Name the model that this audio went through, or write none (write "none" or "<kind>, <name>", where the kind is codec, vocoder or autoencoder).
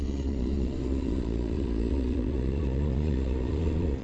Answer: vocoder, Vocos